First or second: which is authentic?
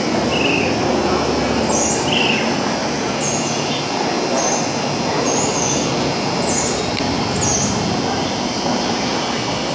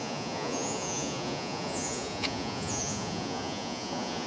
first